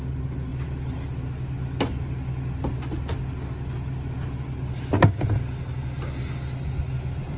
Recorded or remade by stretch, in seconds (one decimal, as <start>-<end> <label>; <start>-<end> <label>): 0.0-7.4 recorded